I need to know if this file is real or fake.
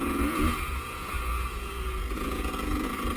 fake